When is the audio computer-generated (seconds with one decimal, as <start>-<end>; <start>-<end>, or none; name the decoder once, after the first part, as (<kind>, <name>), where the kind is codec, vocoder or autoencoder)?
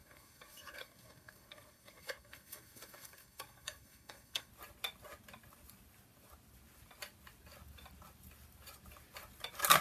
0.0-4.5 (codec, SNAC)